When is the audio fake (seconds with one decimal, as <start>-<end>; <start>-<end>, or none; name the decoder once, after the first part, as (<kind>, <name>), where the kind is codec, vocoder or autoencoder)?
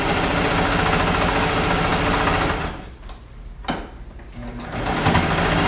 none